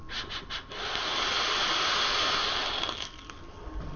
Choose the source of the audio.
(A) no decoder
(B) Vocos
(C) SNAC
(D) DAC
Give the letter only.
A